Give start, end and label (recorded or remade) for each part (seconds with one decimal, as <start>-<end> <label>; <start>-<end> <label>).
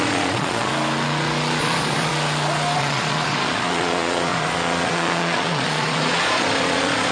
0.0-0.7 remade; 0.7-1.6 recorded; 1.6-2.1 remade; 2.1-2.8 recorded; 2.8-7.1 remade